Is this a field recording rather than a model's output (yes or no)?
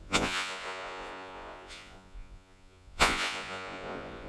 no